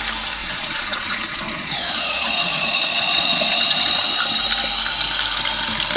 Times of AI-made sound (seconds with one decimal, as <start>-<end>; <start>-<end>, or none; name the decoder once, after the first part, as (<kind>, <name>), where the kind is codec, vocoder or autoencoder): 0.4-4.0 (vocoder, Vocos)